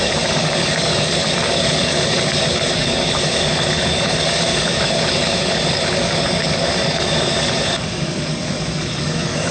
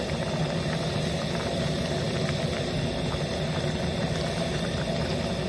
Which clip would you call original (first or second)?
second